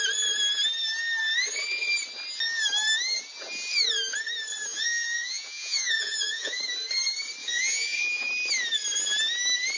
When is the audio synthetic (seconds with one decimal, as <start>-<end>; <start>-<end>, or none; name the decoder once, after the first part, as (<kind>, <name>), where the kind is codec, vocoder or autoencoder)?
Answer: 4.7-6.6 (vocoder, Vocos); 7.4-8.3